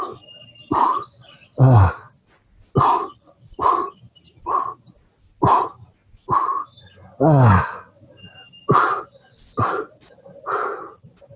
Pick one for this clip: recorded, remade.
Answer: recorded